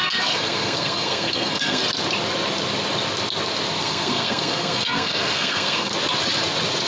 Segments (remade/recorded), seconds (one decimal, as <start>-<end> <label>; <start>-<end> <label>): 0.0-1.8 remade; 1.8-3.8 recorded; 3.8-5.9 remade; 5.9-6.9 recorded